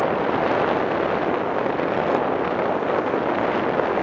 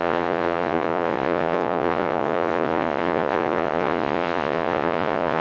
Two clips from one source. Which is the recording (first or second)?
first